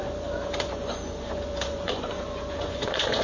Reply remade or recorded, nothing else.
remade